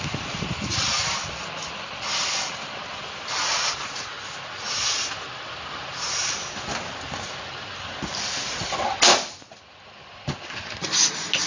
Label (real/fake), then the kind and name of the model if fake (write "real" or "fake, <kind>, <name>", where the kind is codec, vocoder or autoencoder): real